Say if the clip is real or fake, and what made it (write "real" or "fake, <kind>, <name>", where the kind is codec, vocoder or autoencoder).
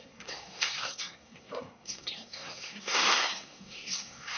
fake, codec, SNAC